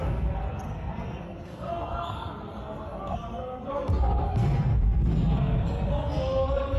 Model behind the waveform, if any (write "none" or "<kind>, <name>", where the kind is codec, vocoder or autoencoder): codec, SNAC